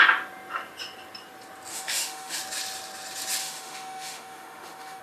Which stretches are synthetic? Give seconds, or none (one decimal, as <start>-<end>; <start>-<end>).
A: 1.7-2.4; 3.4-5.0